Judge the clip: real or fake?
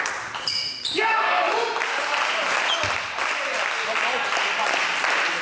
real